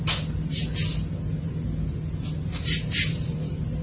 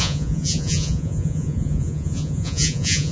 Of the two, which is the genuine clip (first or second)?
first